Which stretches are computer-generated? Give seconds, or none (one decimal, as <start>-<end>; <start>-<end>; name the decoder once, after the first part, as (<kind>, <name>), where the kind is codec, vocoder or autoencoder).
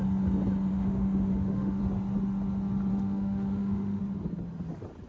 0.7-1.8 (autoencoder, DAC-VAE); 2.9-4.0